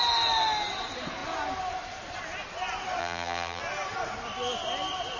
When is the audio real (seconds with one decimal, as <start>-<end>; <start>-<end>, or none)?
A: 0.0-3.0; 3.6-5.2